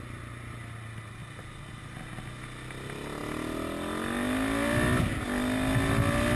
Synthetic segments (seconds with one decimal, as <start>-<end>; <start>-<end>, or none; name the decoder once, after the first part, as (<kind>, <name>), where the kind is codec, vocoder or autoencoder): none